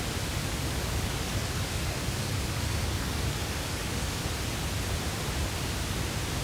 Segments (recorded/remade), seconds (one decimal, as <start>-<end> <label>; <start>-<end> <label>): 0.0-0.4 recorded; 0.4-4.2 remade; 4.2-6.4 recorded